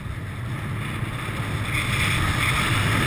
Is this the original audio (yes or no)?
yes